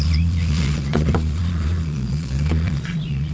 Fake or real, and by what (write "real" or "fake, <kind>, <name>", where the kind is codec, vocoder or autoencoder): fake, vocoder, Vocos